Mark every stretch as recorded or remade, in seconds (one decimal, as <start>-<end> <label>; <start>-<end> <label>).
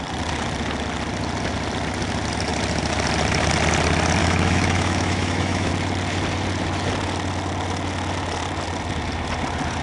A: 0.0-4.2 recorded; 4.2-5.7 remade; 5.7-9.8 recorded